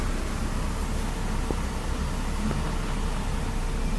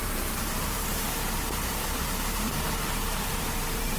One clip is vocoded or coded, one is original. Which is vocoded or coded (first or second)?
second